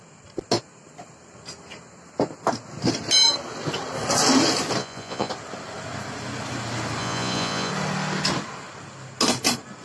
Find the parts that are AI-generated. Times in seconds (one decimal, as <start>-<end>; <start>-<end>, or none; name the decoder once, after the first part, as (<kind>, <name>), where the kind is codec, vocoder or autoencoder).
4.8-5.3 (vocoder, Vocos); 7.0-7.7